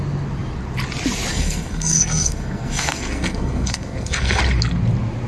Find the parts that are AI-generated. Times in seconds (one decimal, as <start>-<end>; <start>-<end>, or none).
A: 1.3-4.4